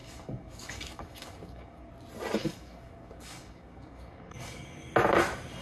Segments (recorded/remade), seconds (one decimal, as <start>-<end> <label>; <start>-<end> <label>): 0.0-1.9 remade; 1.9-2.4 recorded; 2.4-4.9 remade; 4.9-5.6 recorded